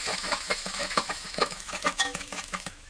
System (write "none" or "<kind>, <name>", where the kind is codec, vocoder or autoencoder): autoencoder, DAC-VAE